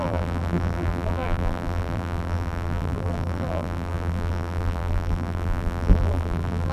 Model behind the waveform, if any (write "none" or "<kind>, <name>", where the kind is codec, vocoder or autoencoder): vocoder, BigVGAN v2